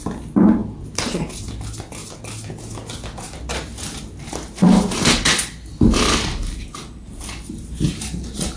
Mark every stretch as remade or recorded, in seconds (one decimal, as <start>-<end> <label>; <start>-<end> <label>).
0.0-0.6 recorded; 0.6-1.3 remade; 1.3-8.6 recorded